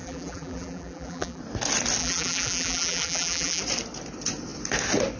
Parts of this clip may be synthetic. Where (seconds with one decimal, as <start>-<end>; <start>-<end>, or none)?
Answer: 0.0-1.4; 2.0-3.6